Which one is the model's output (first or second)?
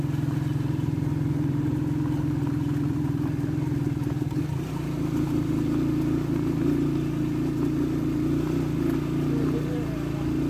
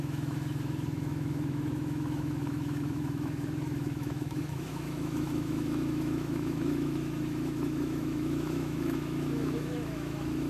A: second